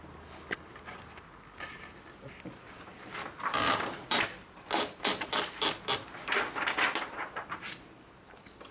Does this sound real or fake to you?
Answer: real